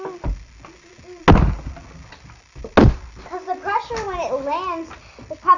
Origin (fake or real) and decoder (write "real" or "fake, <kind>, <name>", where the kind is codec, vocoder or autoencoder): real